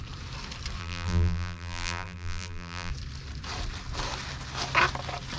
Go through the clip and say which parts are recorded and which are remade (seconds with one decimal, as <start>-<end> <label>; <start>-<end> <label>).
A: 0.0-0.8 recorded; 0.8-2.9 remade; 2.9-5.4 recorded